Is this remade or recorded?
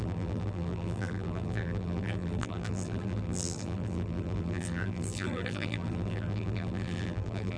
remade